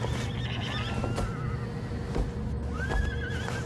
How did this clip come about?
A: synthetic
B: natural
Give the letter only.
B